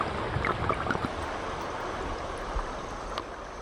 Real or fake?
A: real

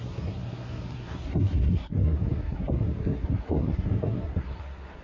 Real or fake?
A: fake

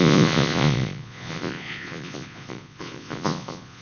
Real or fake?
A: fake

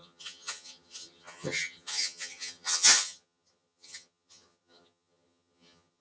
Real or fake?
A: fake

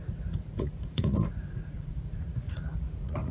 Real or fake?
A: fake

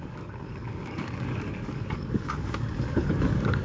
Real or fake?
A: fake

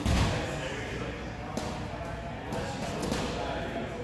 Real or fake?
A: real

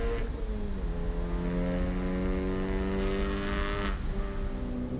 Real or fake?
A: real